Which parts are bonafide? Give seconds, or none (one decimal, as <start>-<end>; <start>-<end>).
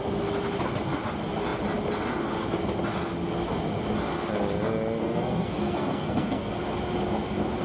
0.0-5.0; 6.5-7.6